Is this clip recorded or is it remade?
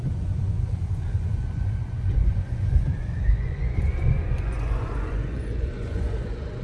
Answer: remade